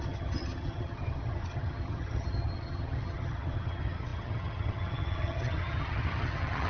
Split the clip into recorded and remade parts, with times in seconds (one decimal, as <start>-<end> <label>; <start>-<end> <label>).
0.0-6.7 remade